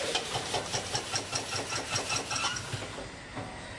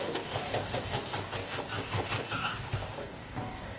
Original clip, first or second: first